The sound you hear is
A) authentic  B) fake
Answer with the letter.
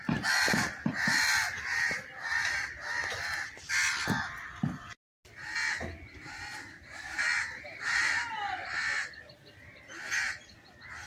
A